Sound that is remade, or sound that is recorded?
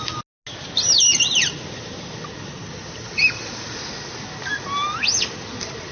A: recorded